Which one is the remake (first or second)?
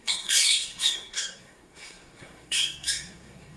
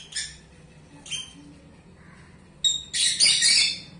first